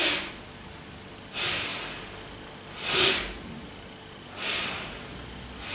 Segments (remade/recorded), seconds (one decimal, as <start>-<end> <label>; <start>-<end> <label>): 0.0-5.7 recorded